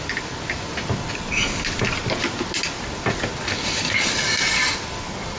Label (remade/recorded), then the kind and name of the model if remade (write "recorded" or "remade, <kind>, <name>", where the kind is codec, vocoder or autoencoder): recorded